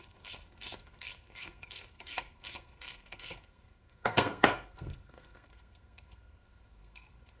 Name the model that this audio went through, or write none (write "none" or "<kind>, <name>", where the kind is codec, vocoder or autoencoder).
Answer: codec, SNAC